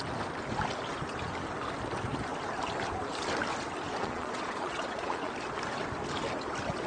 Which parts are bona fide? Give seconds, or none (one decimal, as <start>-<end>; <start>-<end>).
0.0-4.0; 5.3-6.9